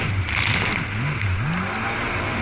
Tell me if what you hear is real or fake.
real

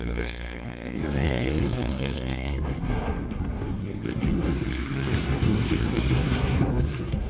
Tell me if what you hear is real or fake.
fake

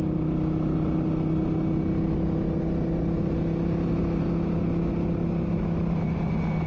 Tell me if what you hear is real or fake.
real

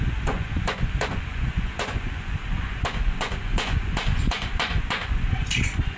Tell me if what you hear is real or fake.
fake